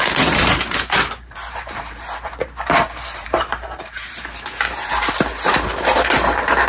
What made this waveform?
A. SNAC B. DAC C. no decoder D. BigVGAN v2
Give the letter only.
D